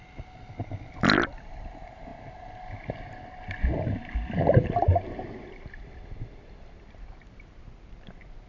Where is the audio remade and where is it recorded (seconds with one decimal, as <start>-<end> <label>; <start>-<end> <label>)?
0.0-8.5 recorded